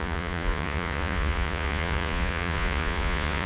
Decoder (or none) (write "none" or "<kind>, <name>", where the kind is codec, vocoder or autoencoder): vocoder, Vocos